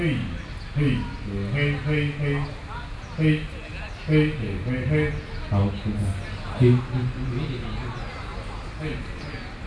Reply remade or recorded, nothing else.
recorded